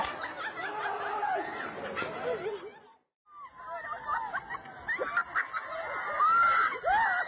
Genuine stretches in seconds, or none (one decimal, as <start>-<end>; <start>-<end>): 0.0-7.3